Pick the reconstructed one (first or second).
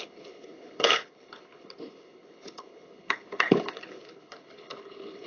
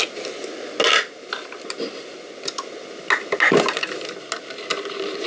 first